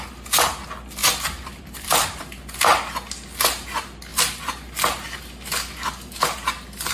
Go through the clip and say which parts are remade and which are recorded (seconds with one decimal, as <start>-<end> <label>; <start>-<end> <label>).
0.0-1.0 recorded; 1.0-2.2 remade; 2.2-4.1 recorded; 4.1-4.7 remade; 4.7-6.9 recorded